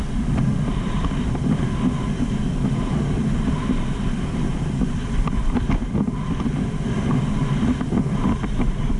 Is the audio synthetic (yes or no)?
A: no